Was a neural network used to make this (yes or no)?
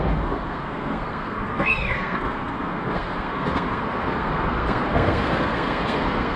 yes